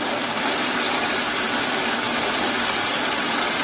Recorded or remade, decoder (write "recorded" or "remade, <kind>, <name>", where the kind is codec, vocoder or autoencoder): recorded